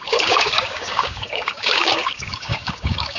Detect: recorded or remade remade